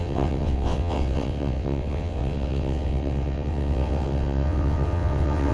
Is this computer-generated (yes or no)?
yes